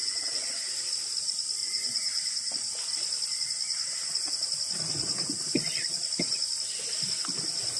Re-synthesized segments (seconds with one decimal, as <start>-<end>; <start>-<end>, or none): 0.0-0.7; 1.6-2.5